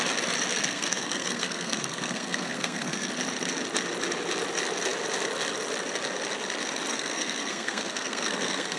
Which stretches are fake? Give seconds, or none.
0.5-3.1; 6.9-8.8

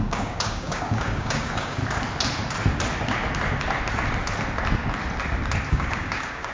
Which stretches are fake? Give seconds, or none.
0.0-1.8; 5.7-6.5

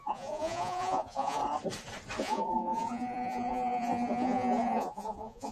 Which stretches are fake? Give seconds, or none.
0.0-1.4; 2.2-5.5

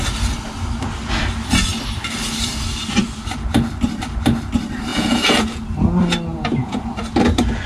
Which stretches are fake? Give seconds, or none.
4.9-5.6; 6.3-6.9